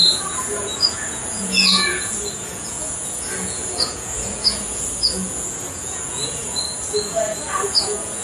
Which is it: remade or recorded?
remade